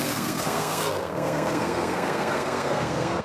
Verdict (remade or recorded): remade